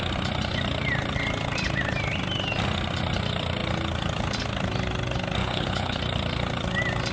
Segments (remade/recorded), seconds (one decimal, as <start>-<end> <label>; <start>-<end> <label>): 0.0-5.4 recorded; 5.4-6.0 remade; 6.0-7.1 recorded